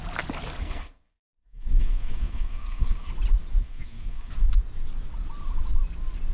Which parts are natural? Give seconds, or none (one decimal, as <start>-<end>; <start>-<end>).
0.0-0.6; 3.1-3.6; 4.3-6.3